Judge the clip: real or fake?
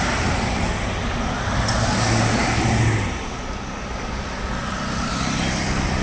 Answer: real